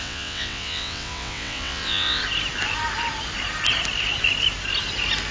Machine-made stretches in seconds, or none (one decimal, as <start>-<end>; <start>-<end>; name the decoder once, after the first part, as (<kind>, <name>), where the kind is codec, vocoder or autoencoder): 0.0-2.2 (vocoder, WaveNeXt)